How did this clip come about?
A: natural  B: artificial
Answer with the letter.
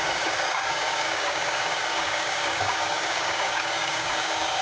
B